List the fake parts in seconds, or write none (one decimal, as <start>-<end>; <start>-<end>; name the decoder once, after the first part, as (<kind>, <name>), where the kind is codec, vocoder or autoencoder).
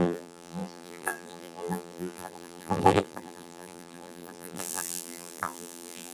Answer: 0.0-6.1 (vocoder, BigVGAN v2)